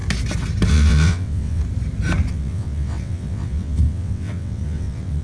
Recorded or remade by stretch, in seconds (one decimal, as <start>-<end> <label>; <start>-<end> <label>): 0.0-0.7 recorded; 0.7-1.6 remade; 1.6-2.3 recorded; 2.3-5.2 remade